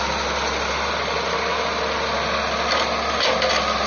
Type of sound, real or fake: real